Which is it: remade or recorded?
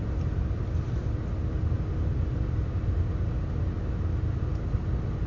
recorded